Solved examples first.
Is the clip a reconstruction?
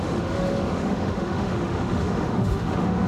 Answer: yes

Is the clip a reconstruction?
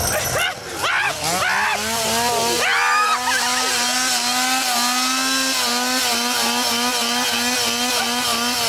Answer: no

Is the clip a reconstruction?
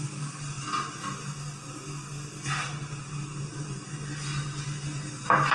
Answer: no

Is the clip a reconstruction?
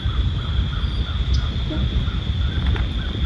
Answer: no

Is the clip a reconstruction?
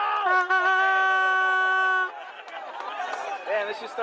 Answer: no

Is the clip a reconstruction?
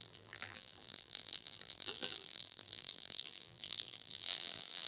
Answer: yes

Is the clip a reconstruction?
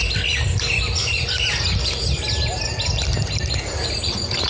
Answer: no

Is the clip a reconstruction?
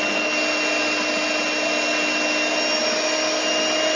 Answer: no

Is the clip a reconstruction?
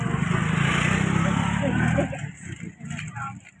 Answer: no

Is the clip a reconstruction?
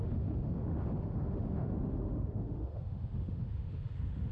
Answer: yes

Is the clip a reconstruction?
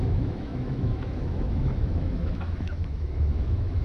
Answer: yes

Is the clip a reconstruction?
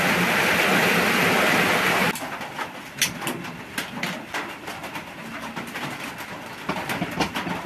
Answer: no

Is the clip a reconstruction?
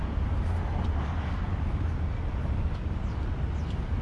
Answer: no